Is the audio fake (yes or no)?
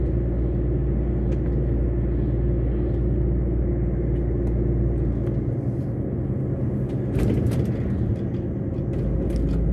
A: no